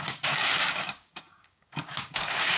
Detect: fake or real fake